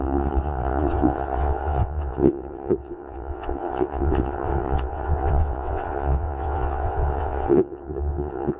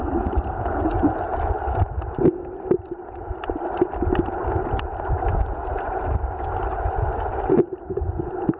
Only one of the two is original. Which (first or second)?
second